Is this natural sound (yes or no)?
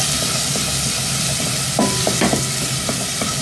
yes